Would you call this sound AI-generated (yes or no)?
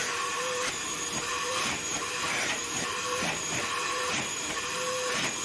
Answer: yes